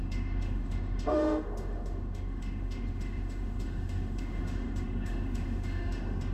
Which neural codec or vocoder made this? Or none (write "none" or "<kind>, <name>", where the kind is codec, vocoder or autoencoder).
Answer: autoencoder, DAC-VAE